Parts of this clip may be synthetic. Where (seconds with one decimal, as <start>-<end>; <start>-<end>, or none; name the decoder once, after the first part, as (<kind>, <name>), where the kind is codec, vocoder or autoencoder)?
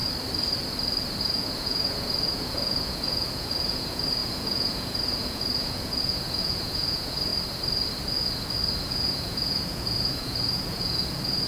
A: 1.2-7.3 (vocoder, Vocos); 8.9-11.5